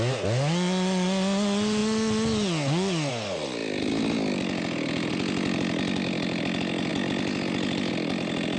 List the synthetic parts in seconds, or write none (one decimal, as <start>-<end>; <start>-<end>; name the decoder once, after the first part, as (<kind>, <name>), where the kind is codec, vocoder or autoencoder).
none